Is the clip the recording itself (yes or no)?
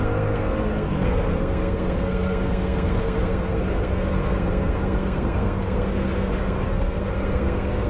no